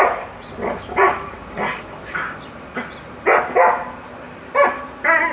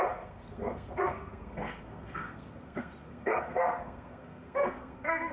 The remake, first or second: second